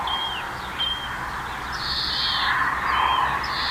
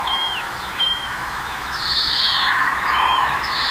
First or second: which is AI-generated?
second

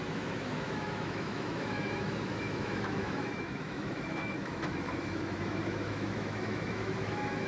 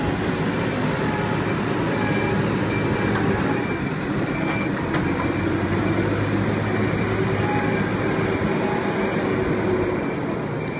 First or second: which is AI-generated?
first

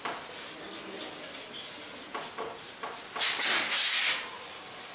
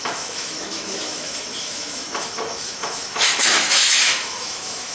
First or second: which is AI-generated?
second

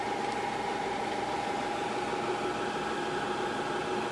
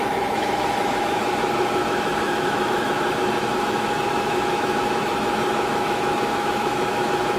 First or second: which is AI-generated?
second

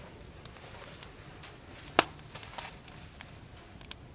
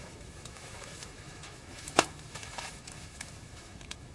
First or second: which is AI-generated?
second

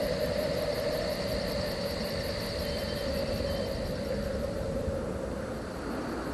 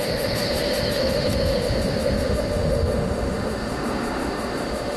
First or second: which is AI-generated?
second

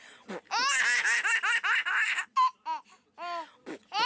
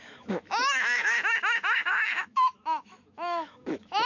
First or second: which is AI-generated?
second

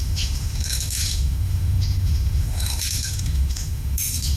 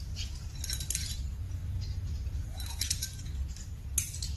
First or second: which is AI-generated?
first